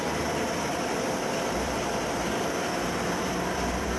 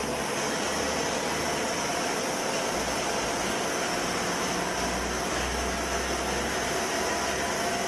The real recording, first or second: second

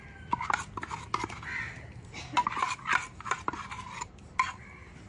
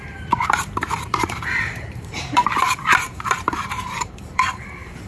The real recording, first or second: first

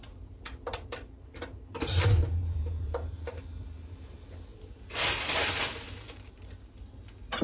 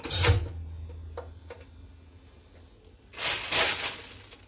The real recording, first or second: second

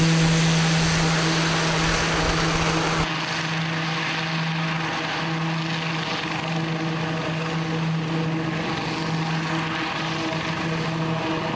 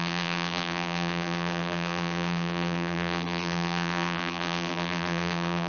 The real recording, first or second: first